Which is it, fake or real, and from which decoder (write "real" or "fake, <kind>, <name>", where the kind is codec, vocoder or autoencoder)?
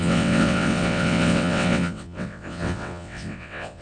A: fake, vocoder, WaveNeXt